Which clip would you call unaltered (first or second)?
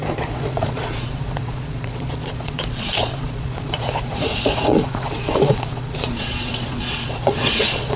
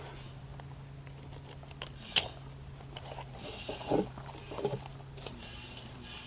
second